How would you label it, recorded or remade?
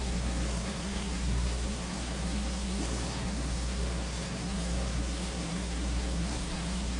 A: remade